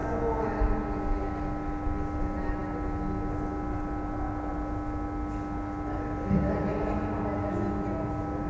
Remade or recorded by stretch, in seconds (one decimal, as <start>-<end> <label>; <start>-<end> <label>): 0.0-8.5 recorded